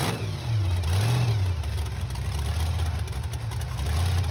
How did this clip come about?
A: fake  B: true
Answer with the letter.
B